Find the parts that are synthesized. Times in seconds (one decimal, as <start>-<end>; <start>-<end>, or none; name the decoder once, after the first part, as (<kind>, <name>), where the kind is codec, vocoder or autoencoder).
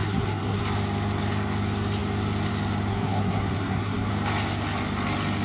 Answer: 0.0-0.6 (codec, SNAC); 2.9-4.1